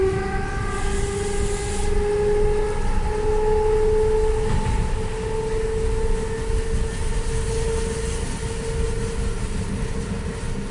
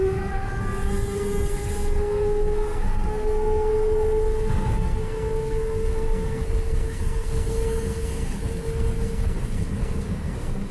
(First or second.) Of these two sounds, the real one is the first